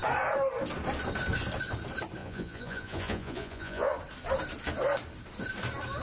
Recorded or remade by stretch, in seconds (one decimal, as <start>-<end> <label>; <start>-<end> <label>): 0.0-2.2 recorded; 2.2-3.9 remade; 3.9-6.0 recorded